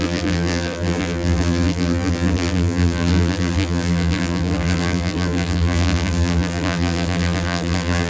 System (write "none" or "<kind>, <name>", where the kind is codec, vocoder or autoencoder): vocoder, BigVGAN v2